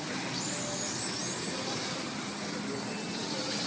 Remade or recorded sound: recorded